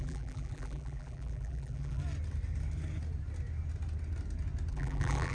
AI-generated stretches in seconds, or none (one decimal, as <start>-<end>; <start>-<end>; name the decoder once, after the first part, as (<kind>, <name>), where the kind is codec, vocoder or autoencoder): 0.0-2.0 (vocoder, BigVGAN v2); 4.7-5.3